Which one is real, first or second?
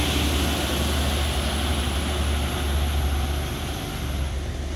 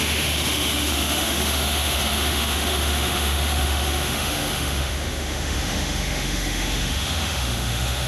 first